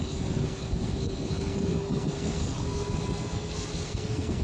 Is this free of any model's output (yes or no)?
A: no